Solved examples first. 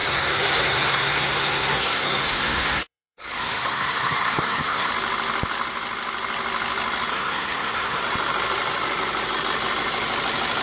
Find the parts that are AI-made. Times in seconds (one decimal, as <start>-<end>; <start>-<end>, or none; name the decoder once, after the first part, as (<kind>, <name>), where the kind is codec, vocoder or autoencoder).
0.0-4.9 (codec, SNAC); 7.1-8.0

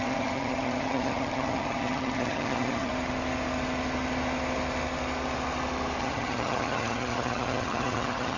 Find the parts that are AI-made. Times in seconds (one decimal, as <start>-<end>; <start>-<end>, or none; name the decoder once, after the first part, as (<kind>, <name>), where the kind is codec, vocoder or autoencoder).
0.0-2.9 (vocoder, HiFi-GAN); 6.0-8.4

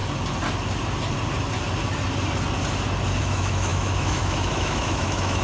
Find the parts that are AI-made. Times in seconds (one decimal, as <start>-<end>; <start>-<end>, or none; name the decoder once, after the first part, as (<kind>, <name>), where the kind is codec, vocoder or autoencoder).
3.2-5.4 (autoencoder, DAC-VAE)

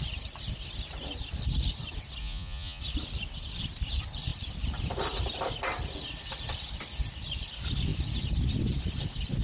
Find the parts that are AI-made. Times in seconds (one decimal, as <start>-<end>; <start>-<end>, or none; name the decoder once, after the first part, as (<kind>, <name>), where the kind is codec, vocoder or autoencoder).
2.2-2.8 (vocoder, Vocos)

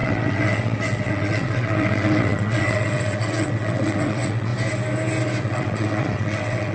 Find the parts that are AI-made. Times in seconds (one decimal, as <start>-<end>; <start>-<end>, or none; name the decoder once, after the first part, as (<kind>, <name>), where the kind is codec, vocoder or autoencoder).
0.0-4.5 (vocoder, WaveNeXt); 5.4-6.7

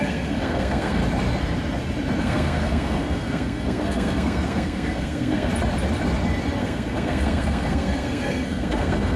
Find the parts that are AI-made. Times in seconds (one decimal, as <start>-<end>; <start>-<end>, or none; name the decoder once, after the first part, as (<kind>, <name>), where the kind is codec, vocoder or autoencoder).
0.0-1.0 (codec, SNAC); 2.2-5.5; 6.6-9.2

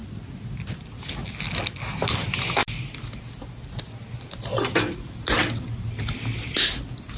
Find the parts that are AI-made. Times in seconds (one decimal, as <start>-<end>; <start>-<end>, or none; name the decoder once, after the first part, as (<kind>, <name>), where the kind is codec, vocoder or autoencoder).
none

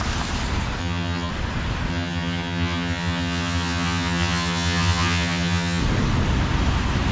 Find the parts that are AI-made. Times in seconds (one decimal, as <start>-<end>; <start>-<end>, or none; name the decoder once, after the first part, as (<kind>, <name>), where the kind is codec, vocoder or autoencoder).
0.8-1.3 (vocoder, HiFi-GAN); 1.9-5.8